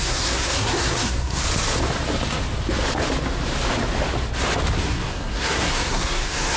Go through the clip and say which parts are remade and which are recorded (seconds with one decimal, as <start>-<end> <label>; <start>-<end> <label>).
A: 0.0-1.4 remade; 1.4-4.8 recorded; 4.8-6.6 remade

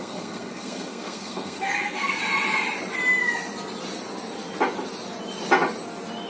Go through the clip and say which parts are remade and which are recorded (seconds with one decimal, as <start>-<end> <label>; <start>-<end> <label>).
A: 0.0-2.2 remade; 2.2-6.3 recorded